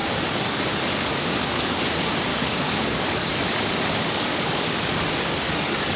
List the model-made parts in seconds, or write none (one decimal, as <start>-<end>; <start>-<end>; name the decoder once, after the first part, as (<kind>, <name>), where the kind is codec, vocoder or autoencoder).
0.0-1.8 (codec, DAC); 2.3-6.0